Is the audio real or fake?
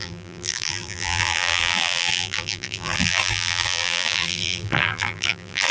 fake